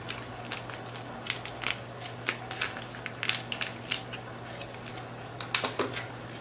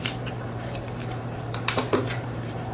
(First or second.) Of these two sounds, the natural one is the first